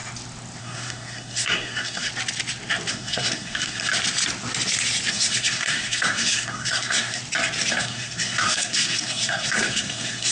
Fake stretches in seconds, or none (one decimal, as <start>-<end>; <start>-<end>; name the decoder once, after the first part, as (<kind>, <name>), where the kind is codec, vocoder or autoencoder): 0.6-2.1 (codec, SNAC); 2.9-3.9; 5.1-7.2; 7.7-10.3